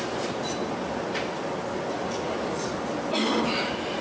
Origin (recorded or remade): recorded